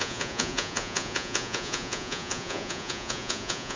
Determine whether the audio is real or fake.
fake